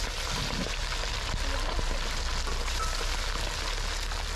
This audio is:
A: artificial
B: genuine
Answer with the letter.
B